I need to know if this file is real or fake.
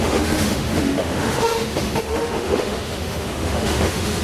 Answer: fake